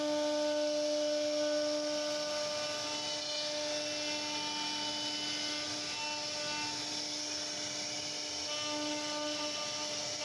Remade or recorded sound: recorded